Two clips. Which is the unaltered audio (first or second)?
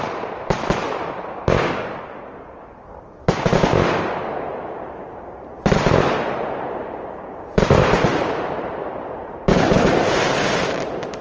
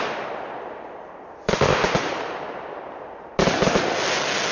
second